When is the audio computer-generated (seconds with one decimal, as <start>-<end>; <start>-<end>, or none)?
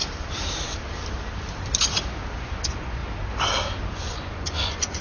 2.4-3.0; 3.9-5.0